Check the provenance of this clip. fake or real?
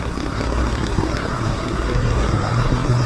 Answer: fake